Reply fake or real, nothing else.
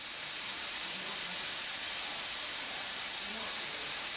fake